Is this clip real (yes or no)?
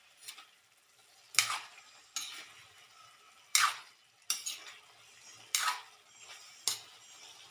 yes